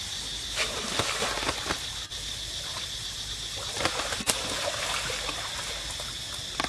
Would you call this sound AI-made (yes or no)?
no